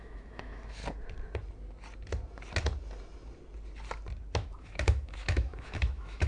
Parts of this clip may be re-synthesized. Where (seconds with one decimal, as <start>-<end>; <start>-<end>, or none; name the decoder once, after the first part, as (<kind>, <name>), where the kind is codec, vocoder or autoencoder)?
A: 0.0-0.8 (autoencoder, DAC-VAE); 4.6-6.3